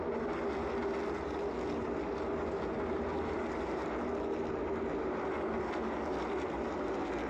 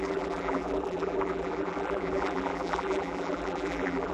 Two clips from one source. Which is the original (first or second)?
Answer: first